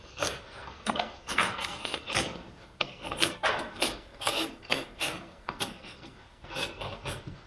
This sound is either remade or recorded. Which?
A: remade